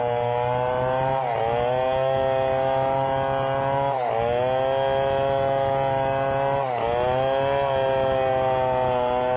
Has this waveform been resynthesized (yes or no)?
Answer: no